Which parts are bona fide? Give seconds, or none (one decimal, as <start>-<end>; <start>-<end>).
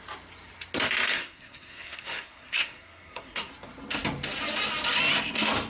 0.0-1.1; 3.5-5.7